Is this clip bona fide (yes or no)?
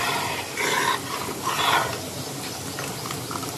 yes